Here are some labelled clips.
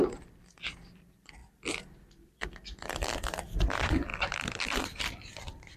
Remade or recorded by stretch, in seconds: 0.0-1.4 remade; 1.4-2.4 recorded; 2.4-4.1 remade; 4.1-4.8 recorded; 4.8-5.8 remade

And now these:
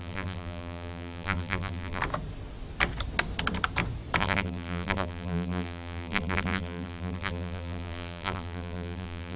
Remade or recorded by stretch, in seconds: 0.0-2.0 remade; 2.0-4.2 recorded; 4.2-9.4 remade

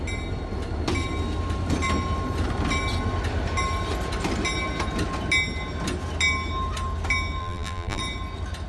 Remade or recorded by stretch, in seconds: 0.0-7.4 recorded; 7.4-8.0 remade; 8.0-8.7 recorded

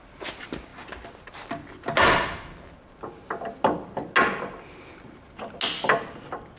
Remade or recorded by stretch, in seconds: 0.0-6.6 recorded

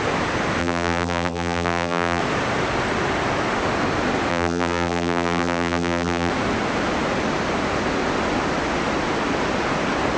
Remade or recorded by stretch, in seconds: 0.0-0.6 recorded; 0.6-2.2 remade; 2.2-4.3 recorded; 4.3-6.3 remade; 6.3-10.2 recorded